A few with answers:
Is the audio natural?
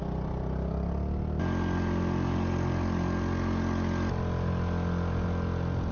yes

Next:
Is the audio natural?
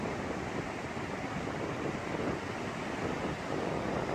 yes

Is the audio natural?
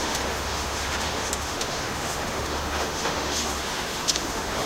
no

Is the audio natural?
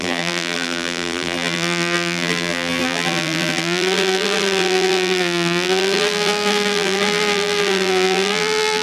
no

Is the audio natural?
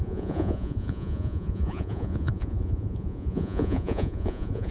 no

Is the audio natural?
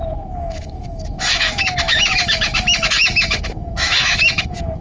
no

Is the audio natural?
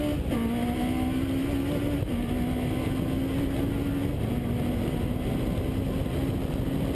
yes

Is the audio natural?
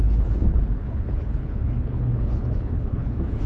no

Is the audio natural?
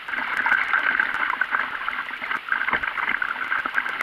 yes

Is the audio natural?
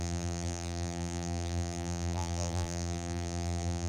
no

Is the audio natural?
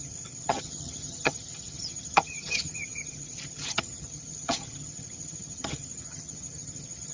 no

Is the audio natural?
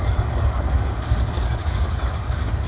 no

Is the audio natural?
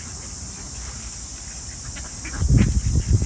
yes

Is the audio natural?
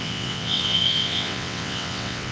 no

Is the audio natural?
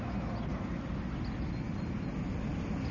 yes